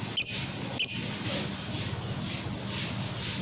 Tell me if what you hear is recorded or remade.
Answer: recorded